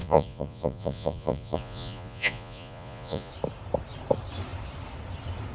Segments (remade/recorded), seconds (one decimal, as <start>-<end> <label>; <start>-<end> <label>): 0.0-3.3 remade; 3.3-5.5 recorded